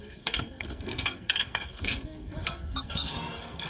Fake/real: fake